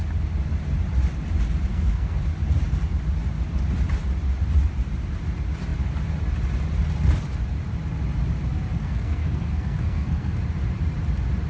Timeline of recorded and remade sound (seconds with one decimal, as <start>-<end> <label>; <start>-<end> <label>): 0.0-1.7 recorded; 1.7-2.2 remade; 2.2-8.8 recorded; 8.8-10.4 remade; 10.4-11.5 recorded